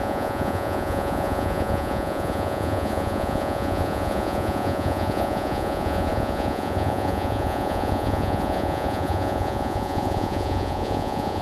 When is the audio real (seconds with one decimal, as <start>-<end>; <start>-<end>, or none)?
none